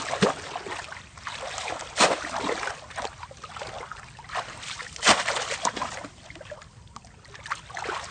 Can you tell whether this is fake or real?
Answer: real